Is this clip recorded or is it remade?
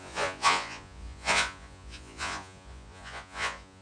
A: remade